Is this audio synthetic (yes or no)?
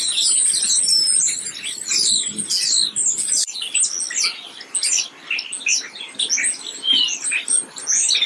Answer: no